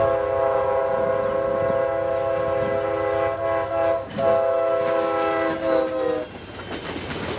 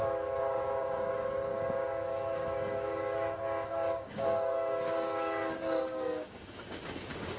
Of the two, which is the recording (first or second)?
first